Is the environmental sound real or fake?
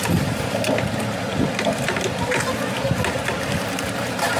real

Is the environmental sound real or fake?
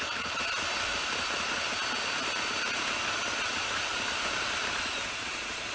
real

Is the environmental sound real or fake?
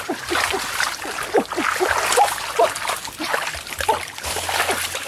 real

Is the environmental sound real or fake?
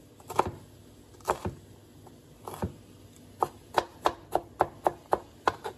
real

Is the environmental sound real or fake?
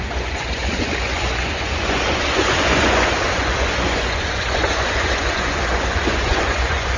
fake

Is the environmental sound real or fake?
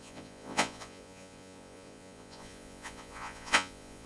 fake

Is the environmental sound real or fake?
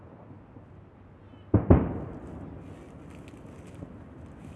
real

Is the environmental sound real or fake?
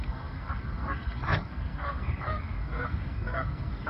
fake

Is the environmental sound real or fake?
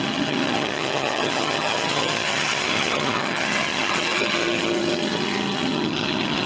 fake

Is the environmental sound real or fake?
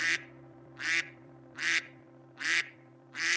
fake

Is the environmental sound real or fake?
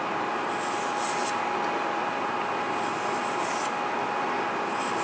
real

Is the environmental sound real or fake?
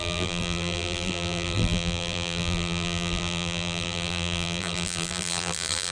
fake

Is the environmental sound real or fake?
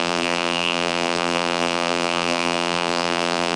fake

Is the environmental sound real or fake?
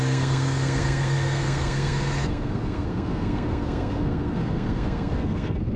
fake